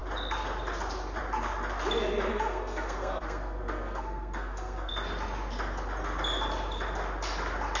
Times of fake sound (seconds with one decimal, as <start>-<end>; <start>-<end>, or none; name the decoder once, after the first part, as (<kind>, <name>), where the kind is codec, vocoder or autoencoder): 2.3-4.9 (codec, SNAC)